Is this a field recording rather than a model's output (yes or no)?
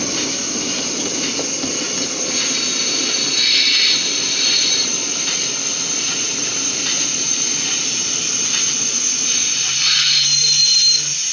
yes